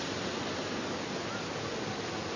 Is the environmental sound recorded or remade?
recorded